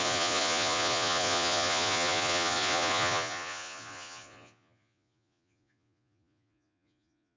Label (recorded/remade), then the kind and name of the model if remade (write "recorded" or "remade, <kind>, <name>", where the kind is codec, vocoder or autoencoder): remade, vocoder, Vocos